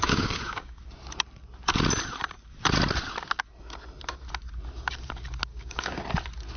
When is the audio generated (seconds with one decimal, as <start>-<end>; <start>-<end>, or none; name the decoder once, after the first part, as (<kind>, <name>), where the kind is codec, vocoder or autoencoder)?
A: 0.0-0.8 (codec, DAC); 5.5-6.0

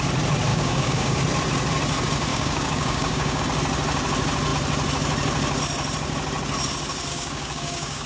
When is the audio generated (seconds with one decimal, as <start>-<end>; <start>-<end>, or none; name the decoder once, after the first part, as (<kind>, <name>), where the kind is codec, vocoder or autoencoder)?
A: 0.5-1.2 (codec, DAC); 2.3-3.4; 7.1-8.1